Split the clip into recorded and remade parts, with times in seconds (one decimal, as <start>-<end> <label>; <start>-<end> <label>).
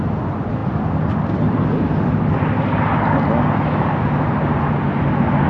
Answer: 0.0-5.5 recorded